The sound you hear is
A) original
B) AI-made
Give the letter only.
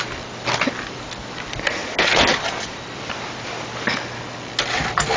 A